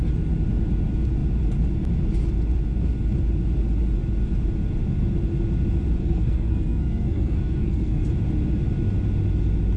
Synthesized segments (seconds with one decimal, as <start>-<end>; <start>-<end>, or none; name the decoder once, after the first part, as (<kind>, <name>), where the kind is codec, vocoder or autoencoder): 6.0-8.1 (codec, SNAC)

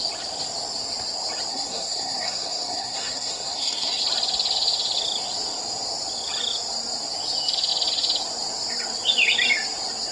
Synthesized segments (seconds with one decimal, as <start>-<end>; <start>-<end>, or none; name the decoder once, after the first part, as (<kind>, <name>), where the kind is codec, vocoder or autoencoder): 1.5-4.0 (codec, SNAC)